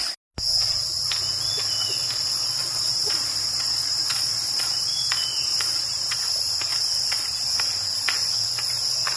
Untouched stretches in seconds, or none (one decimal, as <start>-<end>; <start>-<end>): 0.0-2.6; 6.2-6.7; 7.5-9.2

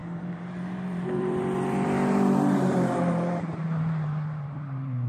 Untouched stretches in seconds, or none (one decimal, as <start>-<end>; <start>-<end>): none

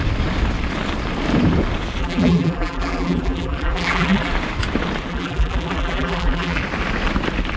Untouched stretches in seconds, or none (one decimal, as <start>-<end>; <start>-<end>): 0.0-2.0; 4.3-5.1; 6.6-7.6